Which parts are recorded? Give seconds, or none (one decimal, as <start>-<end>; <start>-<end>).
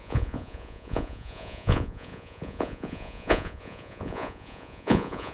none